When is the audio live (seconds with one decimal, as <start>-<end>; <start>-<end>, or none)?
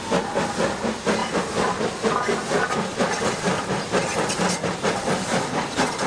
0.0-6.1